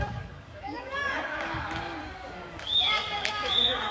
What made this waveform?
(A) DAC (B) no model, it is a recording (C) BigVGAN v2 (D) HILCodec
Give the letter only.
A